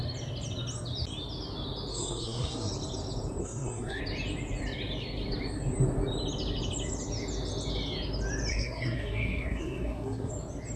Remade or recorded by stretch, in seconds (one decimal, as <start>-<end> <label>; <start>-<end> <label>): 0.0-1.9 recorded; 1.9-2.7 remade; 2.7-3.4 recorded; 3.4-4.0 remade; 4.0-8.5 recorded; 8.5-10.3 remade; 10.3-10.8 recorded